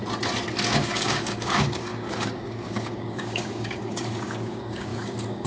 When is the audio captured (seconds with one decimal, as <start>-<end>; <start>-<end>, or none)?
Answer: 0.0-0.7